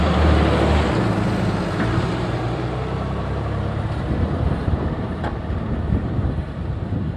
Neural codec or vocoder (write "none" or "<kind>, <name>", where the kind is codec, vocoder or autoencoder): vocoder, BigVGAN v2